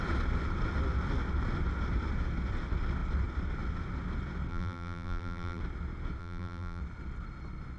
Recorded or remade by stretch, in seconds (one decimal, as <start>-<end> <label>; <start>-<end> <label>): 0.0-4.5 recorded; 4.5-5.6 remade; 5.6-6.2 recorded; 6.2-6.8 remade; 6.8-7.8 recorded